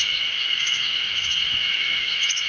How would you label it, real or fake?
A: fake